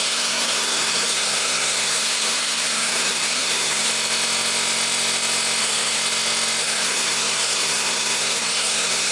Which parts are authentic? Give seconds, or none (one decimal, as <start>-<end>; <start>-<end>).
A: 3.9-5.6; 6.0-6.6